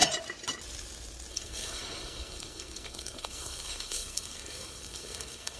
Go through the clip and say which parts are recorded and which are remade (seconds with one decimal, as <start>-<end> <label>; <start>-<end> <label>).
0.0-1.3 recorded; 1.3-5.6 remade